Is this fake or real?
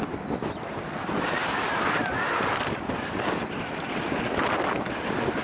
fake